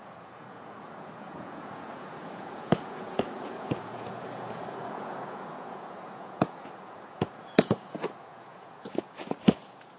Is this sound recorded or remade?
remade